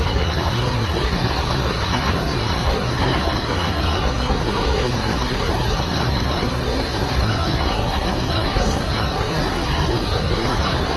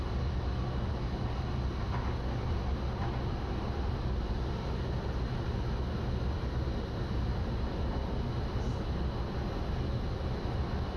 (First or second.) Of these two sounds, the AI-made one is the first